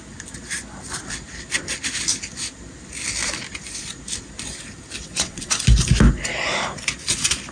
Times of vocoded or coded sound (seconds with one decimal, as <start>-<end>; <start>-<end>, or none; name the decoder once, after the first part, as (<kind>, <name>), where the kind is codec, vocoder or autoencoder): 5.0-5.5 (vocoder, WaveNeXt)